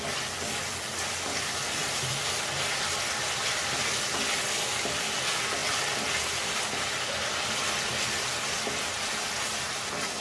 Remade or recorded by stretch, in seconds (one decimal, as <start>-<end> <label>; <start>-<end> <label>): 0.0-10.2 recorded